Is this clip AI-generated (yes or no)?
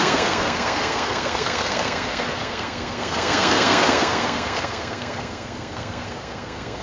yes